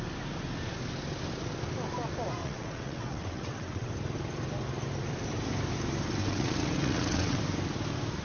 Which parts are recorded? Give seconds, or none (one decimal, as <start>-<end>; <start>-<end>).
0.0-2.4; 3.9-6.2; 7.4-8.2